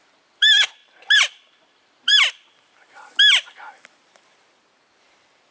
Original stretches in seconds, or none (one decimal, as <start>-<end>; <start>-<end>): 2.1-5.0